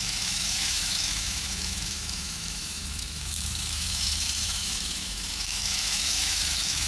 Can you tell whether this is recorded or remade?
remade